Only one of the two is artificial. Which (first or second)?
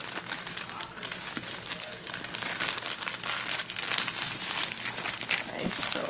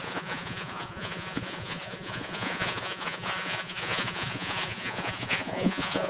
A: second